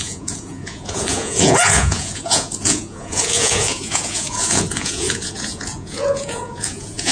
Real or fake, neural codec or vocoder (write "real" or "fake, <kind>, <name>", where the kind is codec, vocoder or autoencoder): fake, vocoder, Vocos